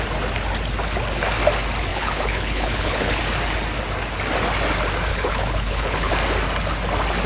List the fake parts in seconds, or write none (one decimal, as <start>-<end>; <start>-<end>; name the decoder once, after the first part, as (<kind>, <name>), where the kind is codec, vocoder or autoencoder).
1.9-3.2 (codec, HILCodec); 5.1-6.1